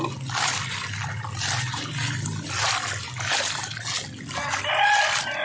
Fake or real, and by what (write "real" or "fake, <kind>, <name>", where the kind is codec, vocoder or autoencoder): real